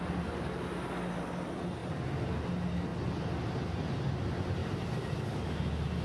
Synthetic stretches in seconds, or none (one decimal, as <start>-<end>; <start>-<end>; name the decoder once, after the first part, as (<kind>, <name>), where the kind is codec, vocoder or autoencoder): none